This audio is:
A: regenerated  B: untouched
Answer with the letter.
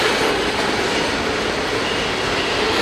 B